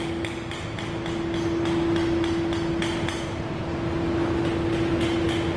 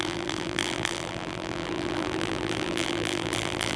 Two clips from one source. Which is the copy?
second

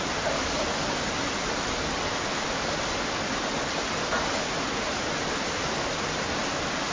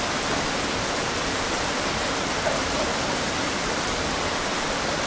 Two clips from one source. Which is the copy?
second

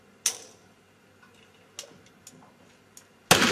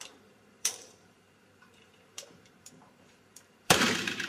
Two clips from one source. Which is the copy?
second